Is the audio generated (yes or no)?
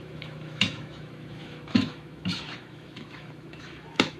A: yes